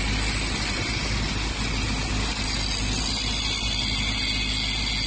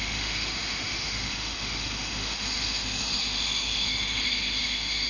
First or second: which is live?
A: first